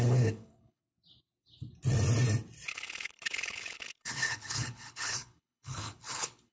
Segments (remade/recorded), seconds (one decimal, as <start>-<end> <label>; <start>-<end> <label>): 0.0-0.8 remade; 0.8-2.7 recorded; 2.7-6.5 remade